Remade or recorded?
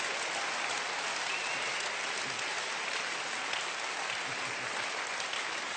recorded